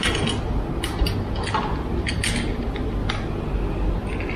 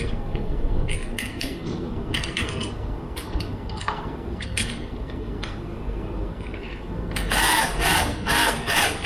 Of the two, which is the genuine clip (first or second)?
first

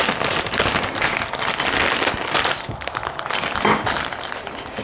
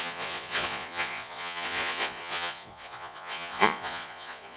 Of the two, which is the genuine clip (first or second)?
first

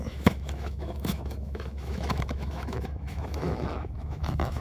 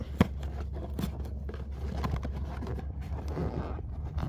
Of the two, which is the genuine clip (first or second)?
second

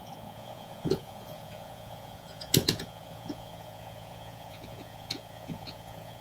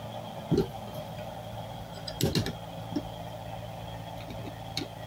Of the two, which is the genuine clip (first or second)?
second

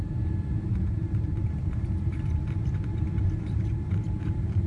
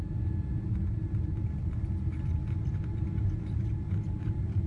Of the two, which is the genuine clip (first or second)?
second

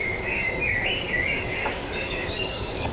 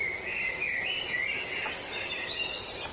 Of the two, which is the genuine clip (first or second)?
second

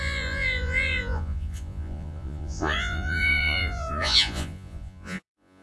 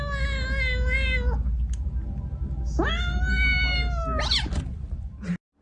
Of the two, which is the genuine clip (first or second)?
second